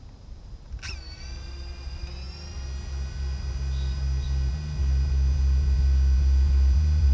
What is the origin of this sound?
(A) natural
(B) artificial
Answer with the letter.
A